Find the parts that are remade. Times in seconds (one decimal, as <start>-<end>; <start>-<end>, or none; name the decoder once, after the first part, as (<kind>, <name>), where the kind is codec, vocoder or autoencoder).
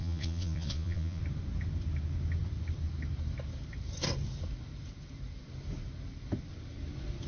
0.0-1.2 (vocoder, Vocos)